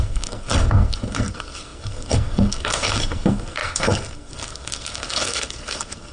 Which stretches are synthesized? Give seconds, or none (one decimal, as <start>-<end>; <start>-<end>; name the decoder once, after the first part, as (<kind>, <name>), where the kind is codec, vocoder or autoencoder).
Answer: 0.0-6.1 (codec, SNAC)